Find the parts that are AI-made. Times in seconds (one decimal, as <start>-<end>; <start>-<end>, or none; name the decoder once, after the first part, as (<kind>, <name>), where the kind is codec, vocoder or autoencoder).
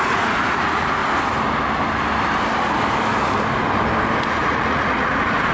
0.0-1.0 (vocoder, Vocos); 4.3-5.5